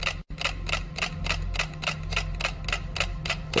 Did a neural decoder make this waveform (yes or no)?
no